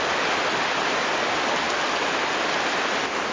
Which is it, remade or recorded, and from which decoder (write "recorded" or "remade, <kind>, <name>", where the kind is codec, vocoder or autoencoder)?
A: recorded